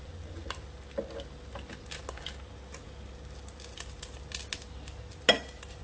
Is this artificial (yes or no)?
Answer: no